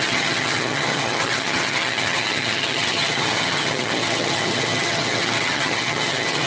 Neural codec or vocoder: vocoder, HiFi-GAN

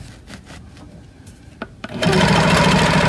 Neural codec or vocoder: none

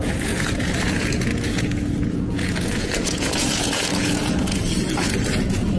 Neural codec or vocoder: vocoder, Vocos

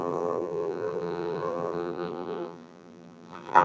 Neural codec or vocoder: vocoder, BigVGAN v2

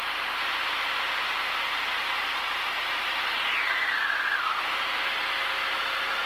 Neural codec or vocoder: none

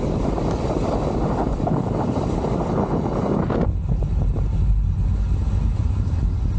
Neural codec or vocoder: none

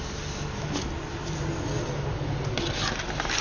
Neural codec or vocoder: none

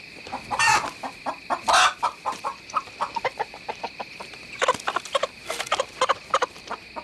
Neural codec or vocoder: none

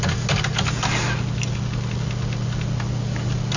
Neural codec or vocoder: none